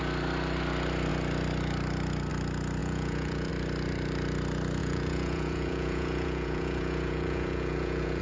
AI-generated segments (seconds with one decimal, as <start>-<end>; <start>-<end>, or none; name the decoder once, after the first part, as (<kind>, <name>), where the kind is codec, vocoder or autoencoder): 2.8-3.5 (vocoder, Vocos); 4.8-8.2